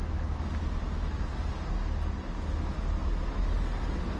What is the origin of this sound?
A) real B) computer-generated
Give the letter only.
A